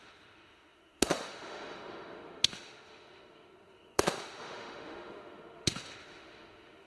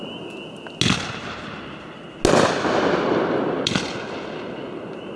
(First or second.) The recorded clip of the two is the second